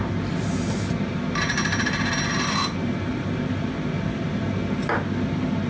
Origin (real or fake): real